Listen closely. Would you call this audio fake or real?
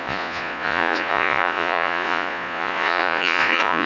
fake